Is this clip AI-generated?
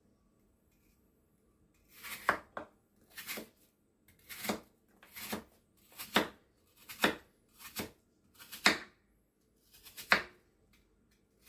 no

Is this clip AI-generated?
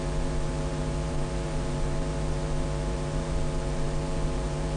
yes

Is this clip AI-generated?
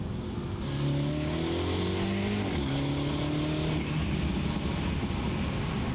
no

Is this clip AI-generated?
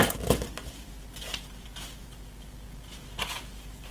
no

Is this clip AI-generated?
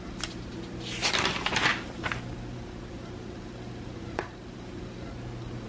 no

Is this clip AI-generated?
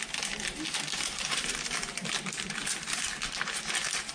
no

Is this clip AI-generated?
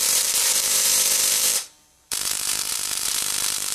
yes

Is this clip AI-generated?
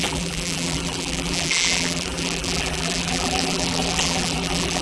yes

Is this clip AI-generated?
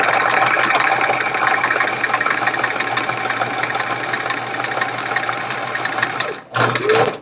no